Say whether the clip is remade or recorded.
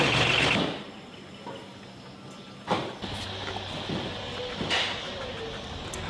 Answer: recorded